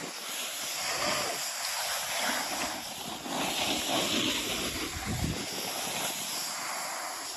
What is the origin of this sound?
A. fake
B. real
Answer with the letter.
B